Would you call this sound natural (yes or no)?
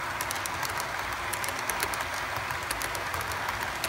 yes